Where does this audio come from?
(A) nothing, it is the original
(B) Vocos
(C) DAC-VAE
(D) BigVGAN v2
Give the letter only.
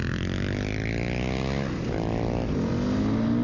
A